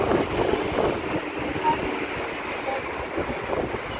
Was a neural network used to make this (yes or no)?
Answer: no